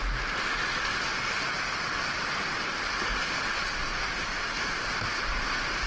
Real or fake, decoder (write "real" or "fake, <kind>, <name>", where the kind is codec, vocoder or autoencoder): real